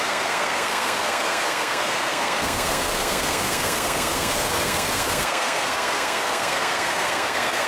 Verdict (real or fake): fake